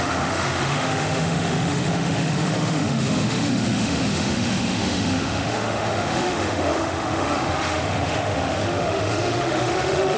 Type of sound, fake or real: fake